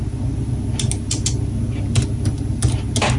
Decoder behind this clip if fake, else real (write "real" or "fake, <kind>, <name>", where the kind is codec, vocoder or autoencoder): real